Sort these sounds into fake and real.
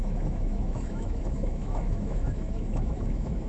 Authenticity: fake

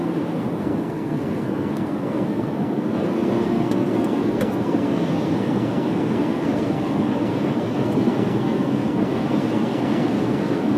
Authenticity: fake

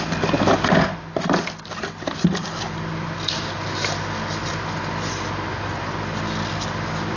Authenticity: real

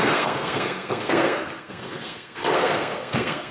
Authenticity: fake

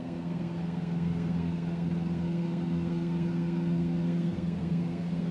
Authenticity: fake